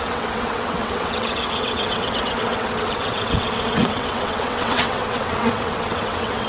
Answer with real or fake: fake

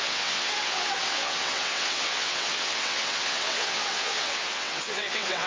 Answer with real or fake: fake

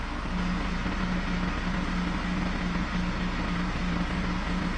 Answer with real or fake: real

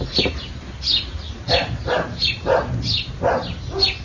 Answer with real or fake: real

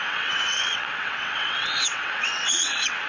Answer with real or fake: fake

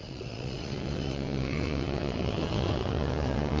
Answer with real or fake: fake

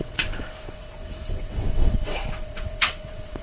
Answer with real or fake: fake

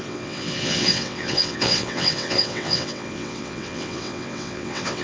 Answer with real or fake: fake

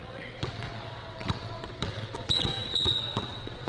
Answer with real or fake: fake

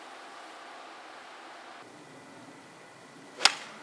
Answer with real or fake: real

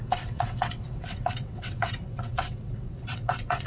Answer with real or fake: fake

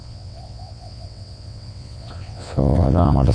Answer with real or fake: fake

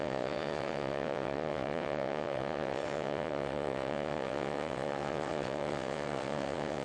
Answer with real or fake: fake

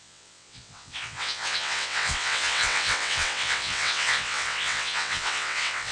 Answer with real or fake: fake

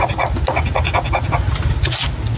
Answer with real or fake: real